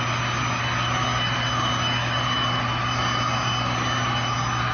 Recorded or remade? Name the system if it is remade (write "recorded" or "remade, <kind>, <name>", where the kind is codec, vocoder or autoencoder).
recorded